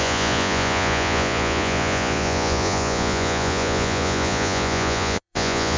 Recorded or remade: remade